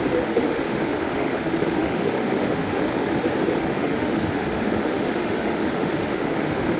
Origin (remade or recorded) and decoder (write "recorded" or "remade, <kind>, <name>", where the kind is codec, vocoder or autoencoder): remade, autoencoder, DAC-VAE